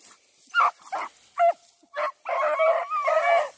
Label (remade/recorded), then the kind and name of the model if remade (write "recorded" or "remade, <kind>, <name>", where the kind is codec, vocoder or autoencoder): recorded